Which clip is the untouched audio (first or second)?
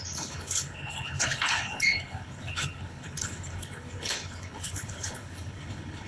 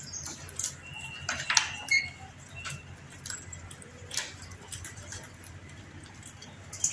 second